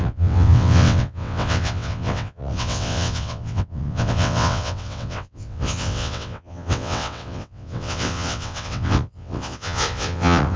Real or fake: fake